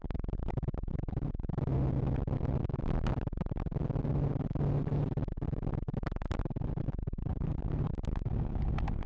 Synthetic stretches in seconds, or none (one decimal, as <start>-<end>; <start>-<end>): none